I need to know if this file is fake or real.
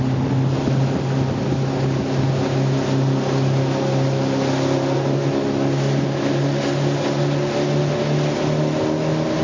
real